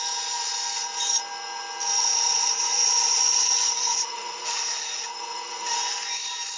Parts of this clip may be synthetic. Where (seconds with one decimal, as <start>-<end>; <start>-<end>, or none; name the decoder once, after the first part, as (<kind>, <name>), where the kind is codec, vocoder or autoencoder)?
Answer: 2.0-6.0 (vocoder, Vocos)